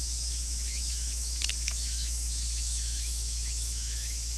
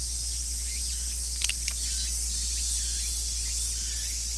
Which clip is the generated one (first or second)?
first